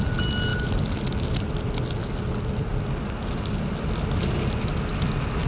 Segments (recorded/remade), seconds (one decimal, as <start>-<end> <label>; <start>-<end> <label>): 0.0-5.5 recorded